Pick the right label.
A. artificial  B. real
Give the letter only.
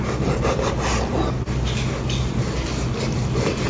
B